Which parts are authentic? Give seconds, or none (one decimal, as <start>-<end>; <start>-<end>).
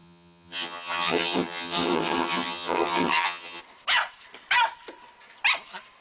3.6-6.0